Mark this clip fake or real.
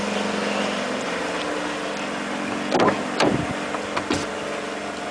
real